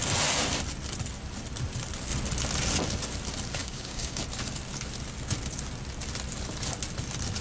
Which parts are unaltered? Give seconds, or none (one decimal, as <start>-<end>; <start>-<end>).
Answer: 0.0-3.6; 4.2-7.4